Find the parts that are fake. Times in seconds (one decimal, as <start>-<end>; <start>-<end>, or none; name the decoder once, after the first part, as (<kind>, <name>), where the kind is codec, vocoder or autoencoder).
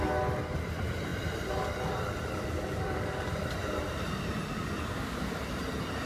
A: 1.1-4.8 (vocoder, BigVGAN v2)